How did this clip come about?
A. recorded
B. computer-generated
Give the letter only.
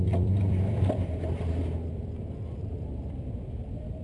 B